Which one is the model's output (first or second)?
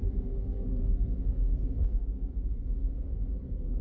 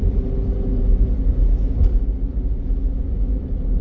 first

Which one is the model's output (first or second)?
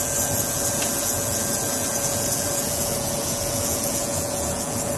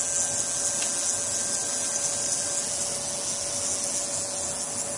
first